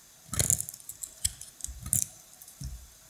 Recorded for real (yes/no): yes